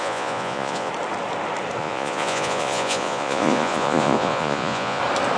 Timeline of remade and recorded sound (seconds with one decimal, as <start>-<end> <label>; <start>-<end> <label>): 0.0-0.9 remade; 0.9-1.8 recorded; 1.8-5.0 remade; 5.0-5.4 recorded